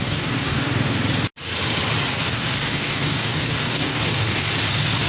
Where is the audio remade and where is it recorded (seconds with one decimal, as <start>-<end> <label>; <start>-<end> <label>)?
0.0-0.7 remade; 0.7-2.1 recorded; 2.1-4.5 remade; 4.5-5.1 recorded